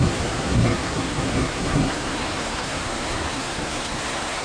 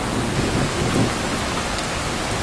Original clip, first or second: second